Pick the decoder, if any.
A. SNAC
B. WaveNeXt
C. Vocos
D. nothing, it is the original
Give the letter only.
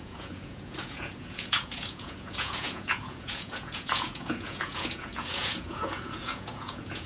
C